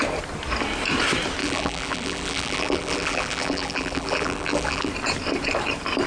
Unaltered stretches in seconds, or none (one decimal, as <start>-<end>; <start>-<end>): 0.0-1.4; 4.9-6.1